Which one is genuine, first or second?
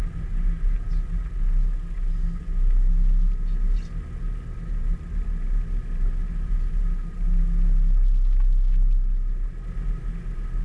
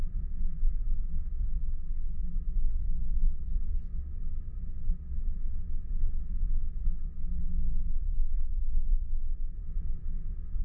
first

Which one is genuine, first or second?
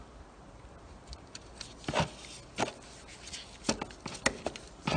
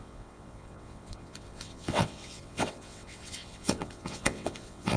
first